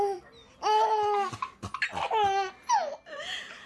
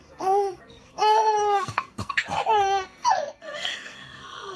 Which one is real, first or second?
first